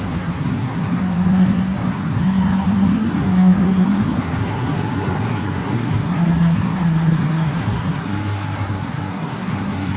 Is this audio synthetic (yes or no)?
yes